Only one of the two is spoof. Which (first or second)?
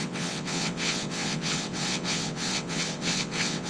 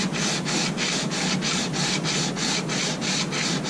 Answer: first